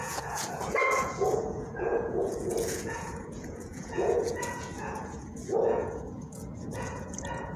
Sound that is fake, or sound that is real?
fake